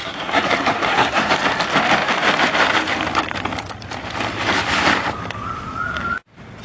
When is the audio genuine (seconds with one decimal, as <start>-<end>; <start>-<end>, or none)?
1.3-6.6